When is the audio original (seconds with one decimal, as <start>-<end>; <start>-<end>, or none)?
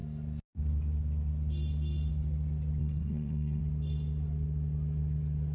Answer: 0.0-2.8; 3.6-5.5